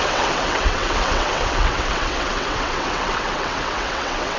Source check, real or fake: fake